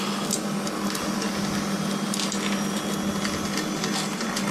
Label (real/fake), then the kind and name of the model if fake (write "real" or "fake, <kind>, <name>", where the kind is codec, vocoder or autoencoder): real